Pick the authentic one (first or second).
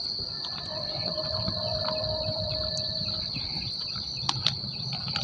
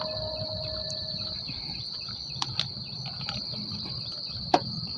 second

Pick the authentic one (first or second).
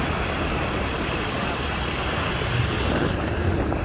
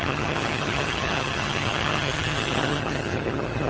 first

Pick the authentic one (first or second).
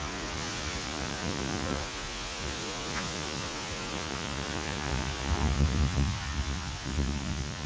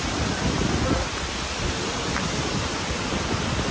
second